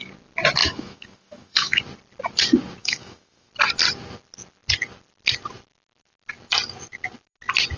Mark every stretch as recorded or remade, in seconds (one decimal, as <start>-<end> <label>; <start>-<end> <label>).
0.0-0.6 recorded; 0.6-1.8 remade; 1.8-2.8 recorded; 2.8-3.5 remade; 3.5-7.8 recorded

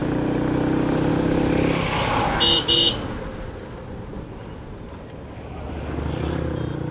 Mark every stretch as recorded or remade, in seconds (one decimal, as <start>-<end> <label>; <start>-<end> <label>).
0.0-6.9 recorded